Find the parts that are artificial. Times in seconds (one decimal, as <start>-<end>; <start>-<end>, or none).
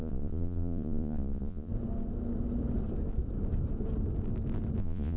0.0-1.7; 4.8-5.2